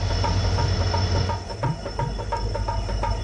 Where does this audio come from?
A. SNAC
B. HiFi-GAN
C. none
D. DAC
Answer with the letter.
C